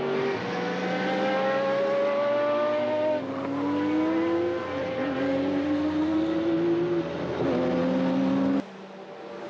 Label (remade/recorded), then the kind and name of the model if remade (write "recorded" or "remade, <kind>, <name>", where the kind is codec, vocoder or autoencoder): recorded